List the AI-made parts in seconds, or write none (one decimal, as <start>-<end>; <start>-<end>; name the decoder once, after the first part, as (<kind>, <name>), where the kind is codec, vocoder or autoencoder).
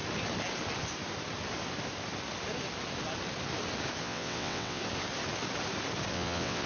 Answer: 4.0-4.8 (vocoder, WaveNeXt); 6.1-6.7